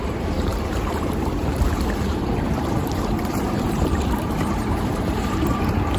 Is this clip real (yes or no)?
no